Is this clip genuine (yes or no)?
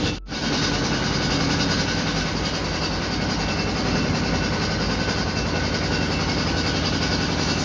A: yes